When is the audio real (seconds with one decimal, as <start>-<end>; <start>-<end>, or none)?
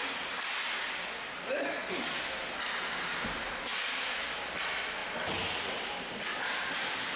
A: 0.0-7.2